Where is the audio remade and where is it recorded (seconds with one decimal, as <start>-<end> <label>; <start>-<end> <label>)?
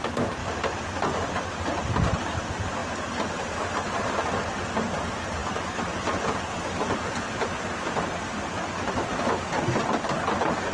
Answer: 0.0-10.7 recorded